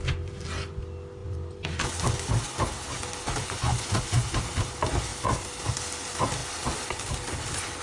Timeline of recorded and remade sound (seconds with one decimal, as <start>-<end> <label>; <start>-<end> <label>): 0.0-3.4 recorded; 3.4-4.2 remade; 4.2-7.8 recorded